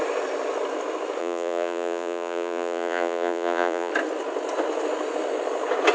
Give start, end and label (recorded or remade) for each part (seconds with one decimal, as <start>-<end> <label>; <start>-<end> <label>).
0.0-1.2 recorded; 1.2-3.9 remade; 3.9-5.9 recorded